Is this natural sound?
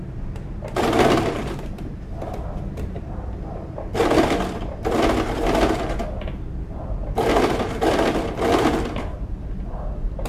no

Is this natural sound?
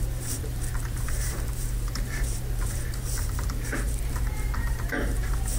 no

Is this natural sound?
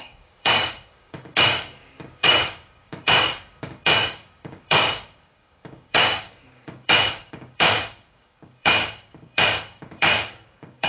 no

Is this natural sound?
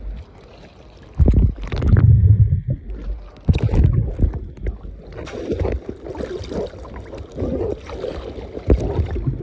yes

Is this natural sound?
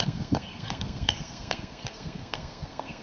no